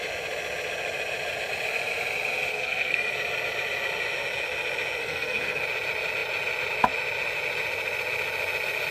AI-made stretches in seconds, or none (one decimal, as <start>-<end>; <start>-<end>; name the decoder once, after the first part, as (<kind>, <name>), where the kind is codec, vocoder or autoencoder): 2.5-3.1 (codec, SNAC); 5.0-5.6